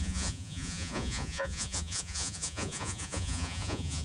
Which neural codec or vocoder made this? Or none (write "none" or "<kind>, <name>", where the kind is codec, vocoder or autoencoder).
vocoder, Vocos